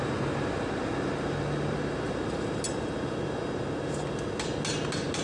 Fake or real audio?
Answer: real